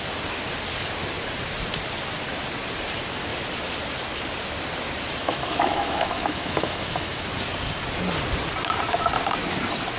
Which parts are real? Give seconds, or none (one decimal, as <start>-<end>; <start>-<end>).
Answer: 0.0-5.2; 7.2-10.0